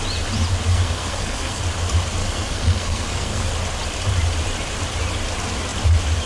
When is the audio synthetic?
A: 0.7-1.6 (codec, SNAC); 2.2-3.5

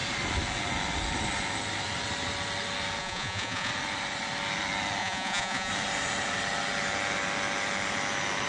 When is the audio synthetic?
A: 3.0-3.7 (vocoder, Vocos); 5.0-5.7

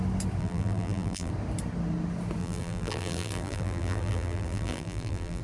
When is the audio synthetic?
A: 0.4-1.3 (vocoder, BigVGAN v2); 2.4-5.4

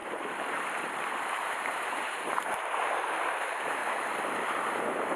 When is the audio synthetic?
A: 0.0-3.8 (vocoder, BigVGAN v2)

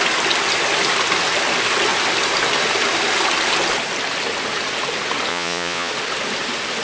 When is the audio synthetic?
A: 5.3-5.9 (vocoder, Vocos)

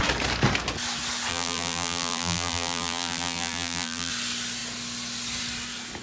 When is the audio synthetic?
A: 1.3-4.1 (vocoder, BigVGAN v2)

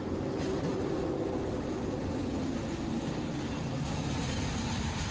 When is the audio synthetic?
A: none

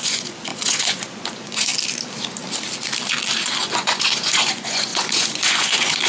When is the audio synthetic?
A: 0.0-1.7 (vocoder, Vocos); 3.6-6.1